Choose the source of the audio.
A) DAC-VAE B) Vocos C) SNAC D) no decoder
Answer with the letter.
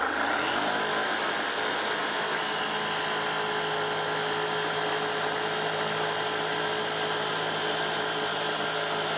D